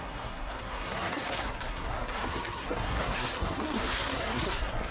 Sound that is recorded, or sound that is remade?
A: remade